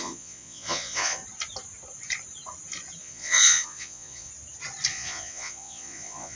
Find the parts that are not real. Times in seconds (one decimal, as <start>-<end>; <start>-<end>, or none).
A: 0.0-1.2; 3.0-4.3; 4.9-6.4